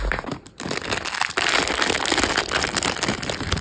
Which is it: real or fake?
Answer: real